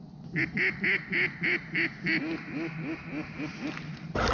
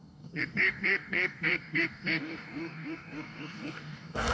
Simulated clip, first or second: second